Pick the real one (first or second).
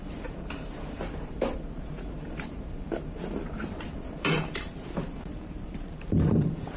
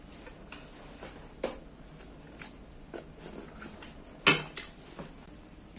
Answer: second